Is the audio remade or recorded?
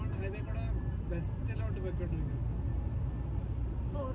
recorded